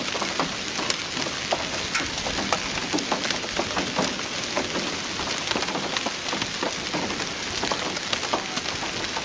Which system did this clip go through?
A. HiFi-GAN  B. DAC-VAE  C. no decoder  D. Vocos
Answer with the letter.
C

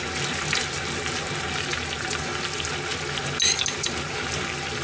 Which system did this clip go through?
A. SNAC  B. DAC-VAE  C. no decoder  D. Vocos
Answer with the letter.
C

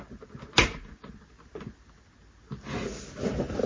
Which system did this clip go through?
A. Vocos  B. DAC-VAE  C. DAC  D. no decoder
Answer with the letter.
D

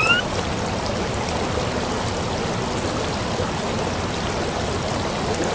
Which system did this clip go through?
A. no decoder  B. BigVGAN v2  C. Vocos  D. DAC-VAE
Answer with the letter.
A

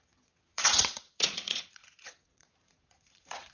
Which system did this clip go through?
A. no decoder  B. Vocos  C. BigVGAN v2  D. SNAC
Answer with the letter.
B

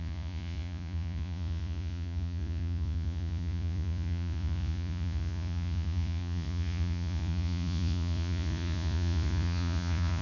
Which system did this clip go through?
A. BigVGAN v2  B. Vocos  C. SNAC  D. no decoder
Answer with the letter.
B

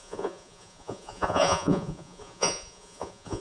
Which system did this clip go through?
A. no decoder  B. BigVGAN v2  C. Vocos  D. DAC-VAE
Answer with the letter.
C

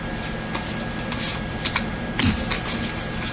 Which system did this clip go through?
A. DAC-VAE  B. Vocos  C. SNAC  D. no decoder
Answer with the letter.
D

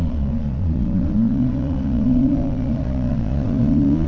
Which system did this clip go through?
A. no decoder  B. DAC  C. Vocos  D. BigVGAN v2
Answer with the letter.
C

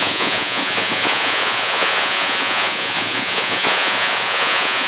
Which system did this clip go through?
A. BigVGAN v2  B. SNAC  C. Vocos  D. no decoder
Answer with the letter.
C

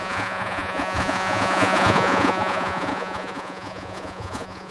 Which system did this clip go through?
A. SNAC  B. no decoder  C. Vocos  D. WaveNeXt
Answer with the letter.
C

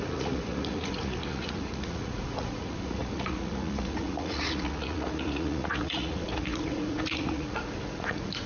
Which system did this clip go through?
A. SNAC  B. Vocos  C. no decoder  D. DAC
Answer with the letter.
B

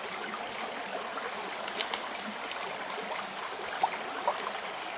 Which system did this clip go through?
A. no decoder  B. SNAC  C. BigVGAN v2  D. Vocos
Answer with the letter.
A